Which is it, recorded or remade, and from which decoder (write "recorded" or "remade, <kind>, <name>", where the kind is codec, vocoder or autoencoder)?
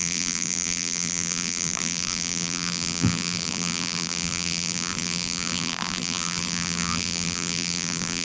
remade, vocoder, BigVGAN v2